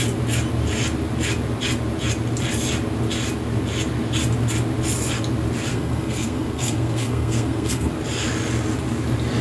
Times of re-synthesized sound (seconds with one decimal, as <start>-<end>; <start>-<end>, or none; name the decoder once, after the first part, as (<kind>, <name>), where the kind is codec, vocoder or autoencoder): 5.7-7.9 (codec, SNAC)